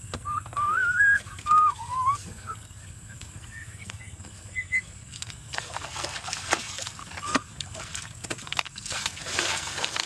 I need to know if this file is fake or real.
fake